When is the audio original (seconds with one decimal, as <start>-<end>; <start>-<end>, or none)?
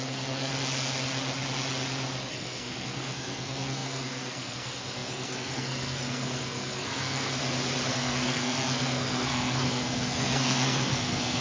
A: 0.5-2.2; 7.4-7.9